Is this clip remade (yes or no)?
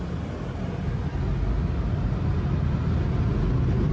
no